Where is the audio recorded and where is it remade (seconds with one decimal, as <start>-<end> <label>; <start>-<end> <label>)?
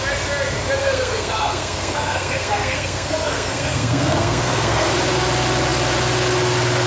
0.0-0.8 recorded; 0.8-4.9 remade; 4.9-6.9 recorded